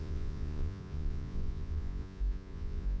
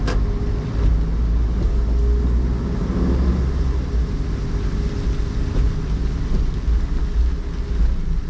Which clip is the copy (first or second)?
first